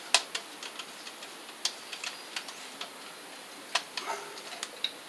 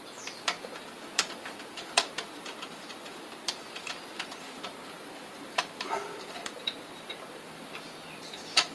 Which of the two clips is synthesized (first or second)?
second